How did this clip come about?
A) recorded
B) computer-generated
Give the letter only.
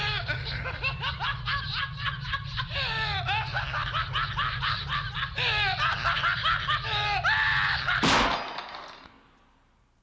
A